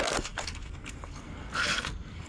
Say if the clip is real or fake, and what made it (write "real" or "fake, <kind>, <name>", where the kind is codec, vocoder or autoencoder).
fake, codec, SNAC